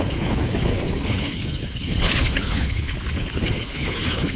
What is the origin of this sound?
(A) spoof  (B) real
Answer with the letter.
A